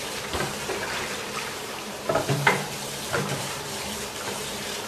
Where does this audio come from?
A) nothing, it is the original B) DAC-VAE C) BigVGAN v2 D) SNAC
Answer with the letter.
C